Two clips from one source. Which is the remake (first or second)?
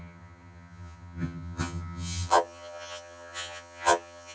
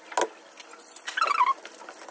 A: first